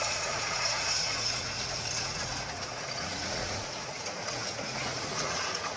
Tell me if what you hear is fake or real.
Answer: fake